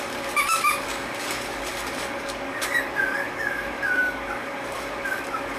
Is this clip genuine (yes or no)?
no